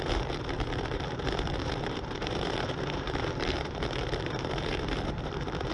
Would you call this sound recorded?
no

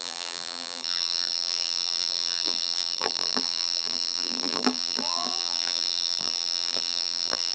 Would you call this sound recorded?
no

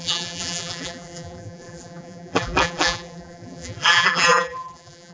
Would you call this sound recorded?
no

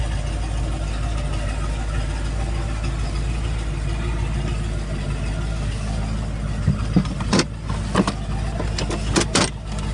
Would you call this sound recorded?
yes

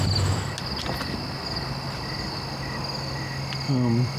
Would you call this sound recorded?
yes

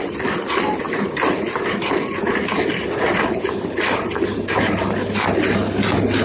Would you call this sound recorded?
yes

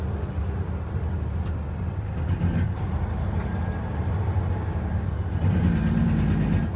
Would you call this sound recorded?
yes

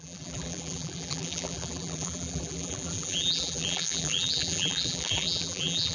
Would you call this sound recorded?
no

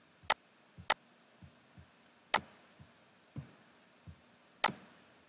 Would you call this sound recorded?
yes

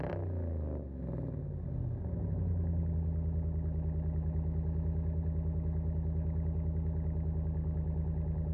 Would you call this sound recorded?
yes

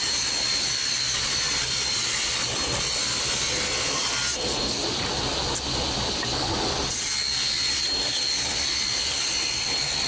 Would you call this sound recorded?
yes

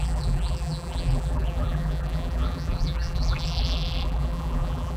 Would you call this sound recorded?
no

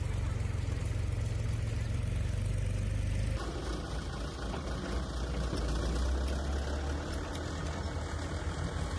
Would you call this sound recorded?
yes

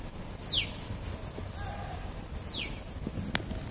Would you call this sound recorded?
yes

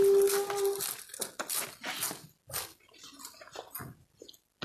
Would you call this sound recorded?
yes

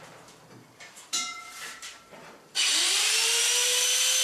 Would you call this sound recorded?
no